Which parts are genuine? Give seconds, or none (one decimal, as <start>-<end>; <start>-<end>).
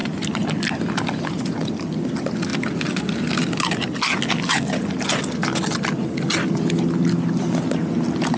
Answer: 0.0-8.4